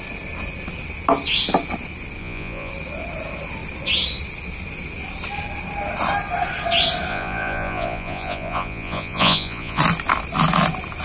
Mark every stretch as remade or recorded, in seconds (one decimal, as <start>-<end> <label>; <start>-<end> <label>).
0.0-2.2 recorded; 2.2-2.7 remade; 2.7-7.1 recorded; 7.1-9.8 remade; 9.8-11.0 recorded